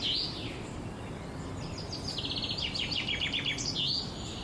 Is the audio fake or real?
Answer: real